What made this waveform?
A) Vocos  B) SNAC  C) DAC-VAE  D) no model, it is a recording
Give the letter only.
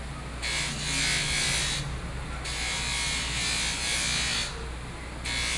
D